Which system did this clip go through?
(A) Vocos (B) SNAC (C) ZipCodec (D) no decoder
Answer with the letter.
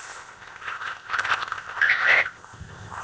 C